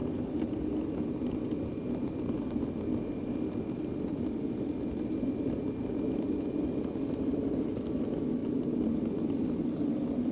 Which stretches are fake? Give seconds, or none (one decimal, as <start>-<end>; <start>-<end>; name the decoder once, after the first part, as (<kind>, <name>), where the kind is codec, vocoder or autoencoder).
none